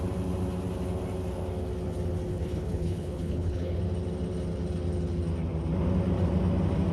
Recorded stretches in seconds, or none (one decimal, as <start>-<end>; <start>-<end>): 0.0-2.3; 3.8-6.9